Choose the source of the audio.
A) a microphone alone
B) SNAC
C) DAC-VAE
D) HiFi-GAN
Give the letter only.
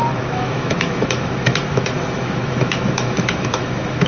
C